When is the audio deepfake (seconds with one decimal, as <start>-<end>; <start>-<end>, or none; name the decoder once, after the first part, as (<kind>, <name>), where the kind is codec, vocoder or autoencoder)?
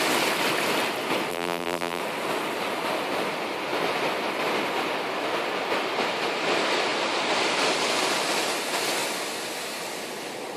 1.3-2.0 (vocoder, BigVGAN v2)